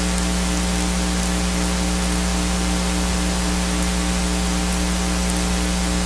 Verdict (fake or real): real